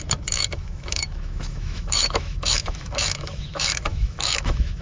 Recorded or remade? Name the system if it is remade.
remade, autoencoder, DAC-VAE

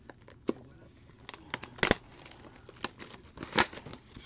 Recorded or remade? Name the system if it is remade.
recorded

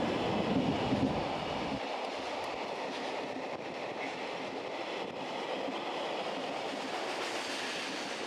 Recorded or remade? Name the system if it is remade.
recorded